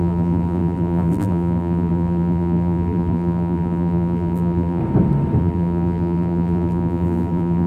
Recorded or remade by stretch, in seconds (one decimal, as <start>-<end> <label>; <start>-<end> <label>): 0.0-4.8 remade; 4.8-5.4 recorded; 5.4-7.7 remade